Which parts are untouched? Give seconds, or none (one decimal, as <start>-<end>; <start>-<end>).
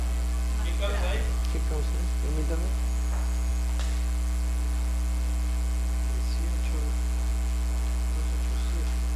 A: 0.0-9.2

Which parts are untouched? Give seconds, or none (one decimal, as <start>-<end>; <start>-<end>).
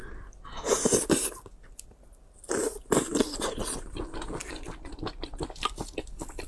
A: 0.0-6.5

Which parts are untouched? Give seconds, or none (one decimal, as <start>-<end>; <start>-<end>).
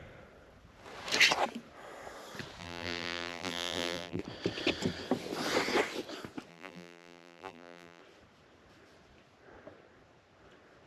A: 0.0-2.6; 4.2-6.5; 8.0-10.9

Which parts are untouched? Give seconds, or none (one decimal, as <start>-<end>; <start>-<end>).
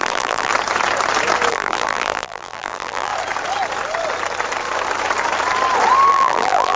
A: 0.5-1.5; 3.1-6.1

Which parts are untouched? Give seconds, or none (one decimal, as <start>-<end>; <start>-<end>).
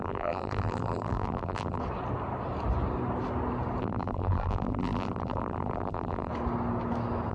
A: 1.8-3.8; 6.3-7.3